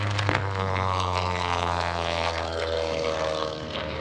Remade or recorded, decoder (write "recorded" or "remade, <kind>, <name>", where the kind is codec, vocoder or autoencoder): remade, codec, SNAC